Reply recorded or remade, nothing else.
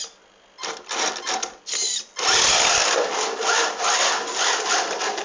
recorded